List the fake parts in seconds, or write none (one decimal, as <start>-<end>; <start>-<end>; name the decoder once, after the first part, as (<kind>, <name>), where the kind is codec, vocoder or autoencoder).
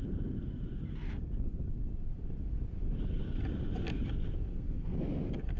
4.5-5.0 (codec, SNAC)